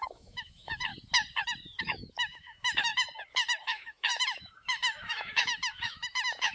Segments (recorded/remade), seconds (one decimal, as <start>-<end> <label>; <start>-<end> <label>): 0.0-0.9 remade; 0.9-1.8 recorded; 1.8-2.9 remade; 2.9-3.6 recorded; 3.6-6.5 remade